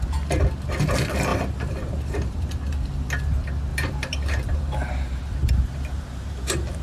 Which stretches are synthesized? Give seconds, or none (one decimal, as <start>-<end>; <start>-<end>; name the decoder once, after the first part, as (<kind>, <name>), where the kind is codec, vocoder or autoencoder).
1.3-3.1 (vocoder, BigVGAN v2); 3.7-6.8